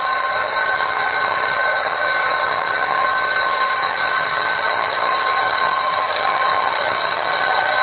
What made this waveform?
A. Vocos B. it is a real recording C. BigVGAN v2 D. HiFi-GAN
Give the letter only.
D